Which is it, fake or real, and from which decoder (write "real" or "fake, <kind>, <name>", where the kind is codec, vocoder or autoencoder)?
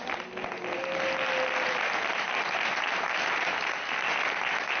real